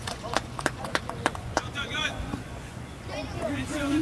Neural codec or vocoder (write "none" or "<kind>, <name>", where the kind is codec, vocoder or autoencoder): vocoder, Vocos